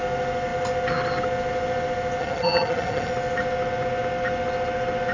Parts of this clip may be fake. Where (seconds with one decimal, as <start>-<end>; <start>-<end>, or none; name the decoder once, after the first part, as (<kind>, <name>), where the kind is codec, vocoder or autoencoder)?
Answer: 2.2-3.1 (vocoder, HiFi-GAN)